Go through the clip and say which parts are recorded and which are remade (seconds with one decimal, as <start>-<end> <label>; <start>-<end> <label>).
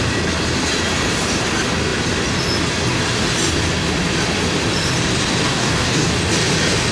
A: 0.0-5.5 recorded; 5.5-6.1 remade; 6.1-6.9 recorded